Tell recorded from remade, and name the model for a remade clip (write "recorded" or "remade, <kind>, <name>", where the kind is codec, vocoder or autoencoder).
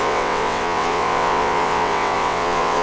remade, vocoder, WaveNeXt